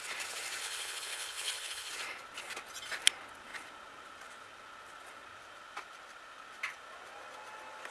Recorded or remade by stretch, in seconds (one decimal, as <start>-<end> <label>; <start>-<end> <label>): 0.0-0.6 recorded; 0.6-1.9 remade; 1.9-7.9 recorded